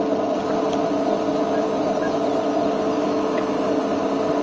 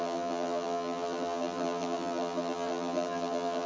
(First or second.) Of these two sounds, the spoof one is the second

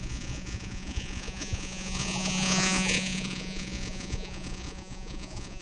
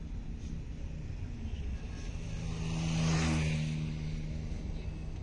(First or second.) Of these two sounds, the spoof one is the first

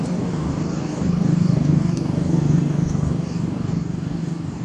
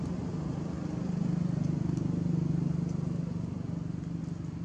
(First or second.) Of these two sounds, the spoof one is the first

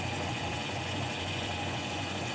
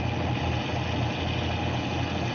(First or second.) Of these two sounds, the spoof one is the first